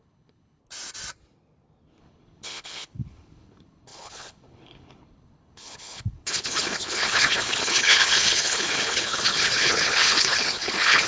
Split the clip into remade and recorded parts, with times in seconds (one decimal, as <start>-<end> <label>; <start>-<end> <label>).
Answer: 0.0-0.6 remade; 0.6-2.0 recorded; 2.0-11.1 remade